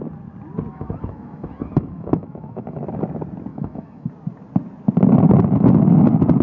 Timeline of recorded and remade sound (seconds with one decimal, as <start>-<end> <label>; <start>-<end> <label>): 0.0-0.7 recorded; 0.7-2.8 remade; 2.8-3.5 recorded; 3.5-4.1 remade; 4.1-6.4 recorded